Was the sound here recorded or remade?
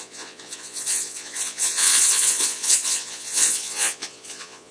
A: remade